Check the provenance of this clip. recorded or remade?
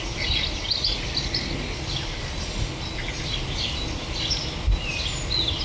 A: recorded